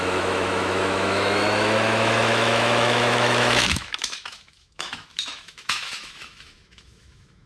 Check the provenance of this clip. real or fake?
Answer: fake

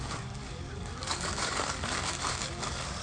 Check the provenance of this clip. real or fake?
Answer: fake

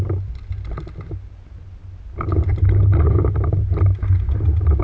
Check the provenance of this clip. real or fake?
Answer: real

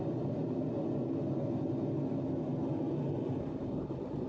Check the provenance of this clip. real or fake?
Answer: real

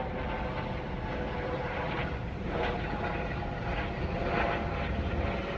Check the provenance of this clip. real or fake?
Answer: real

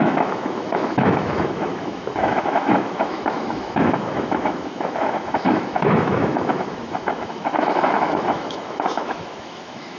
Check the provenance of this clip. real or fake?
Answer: fake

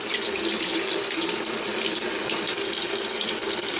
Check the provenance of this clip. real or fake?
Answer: real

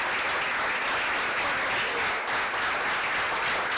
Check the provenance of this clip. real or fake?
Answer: real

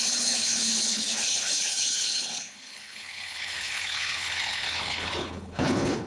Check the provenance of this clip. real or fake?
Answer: fake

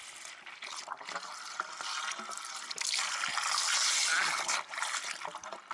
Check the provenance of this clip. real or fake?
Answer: real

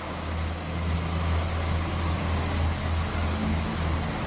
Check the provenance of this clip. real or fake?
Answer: real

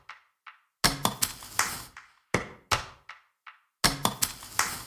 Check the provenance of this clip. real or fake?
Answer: real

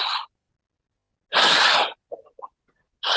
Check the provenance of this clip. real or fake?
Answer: real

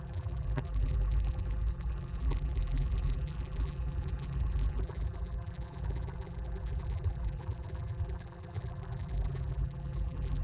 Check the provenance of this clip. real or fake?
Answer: fake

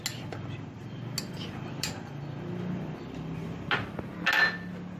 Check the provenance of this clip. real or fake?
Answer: real